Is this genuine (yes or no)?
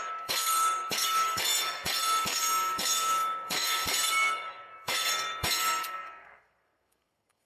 no